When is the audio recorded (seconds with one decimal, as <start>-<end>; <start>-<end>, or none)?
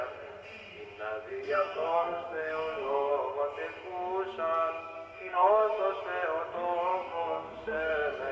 0.0-1.3; 3.1-4.8; 6.0-6.9; 7.9-8.3